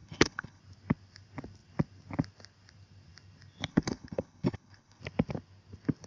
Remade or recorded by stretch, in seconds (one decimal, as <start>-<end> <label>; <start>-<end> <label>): 0.0-0.6 remade; 0.6-3.7 recorded; 3.7-5.0 remade; 5.0-6.1 recorded